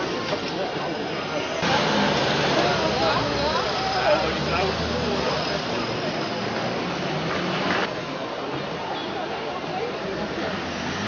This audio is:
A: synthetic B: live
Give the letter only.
B